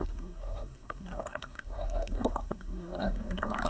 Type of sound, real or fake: fake